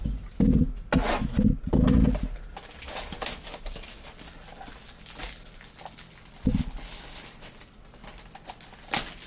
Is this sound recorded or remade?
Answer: recorded